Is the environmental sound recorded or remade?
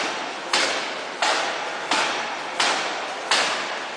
recorded